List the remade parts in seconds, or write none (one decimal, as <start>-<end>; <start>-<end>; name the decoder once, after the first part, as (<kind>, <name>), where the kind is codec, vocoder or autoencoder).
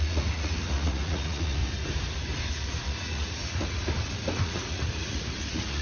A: 0.0-1.6 (vocoder, Vocos); 2.5-5.8